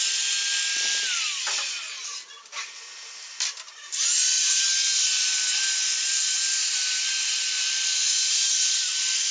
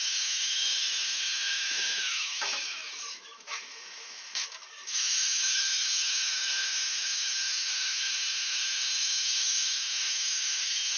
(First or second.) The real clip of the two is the first